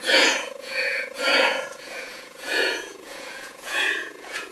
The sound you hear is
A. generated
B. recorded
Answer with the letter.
A